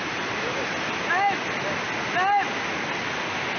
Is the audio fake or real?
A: real